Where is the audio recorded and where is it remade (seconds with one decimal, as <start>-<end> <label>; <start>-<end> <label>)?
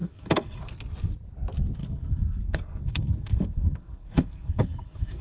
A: 0.0-0.6 remade; 0.6-1.8 recorded; 1.8-5.2 remade